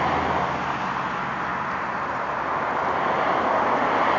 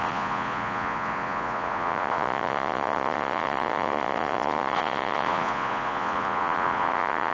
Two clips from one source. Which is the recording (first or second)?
first